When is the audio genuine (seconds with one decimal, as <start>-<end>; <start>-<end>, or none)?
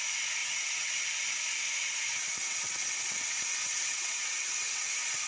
0.0-0.4; 1.0-2.1